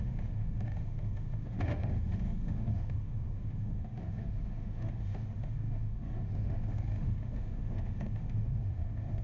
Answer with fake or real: fake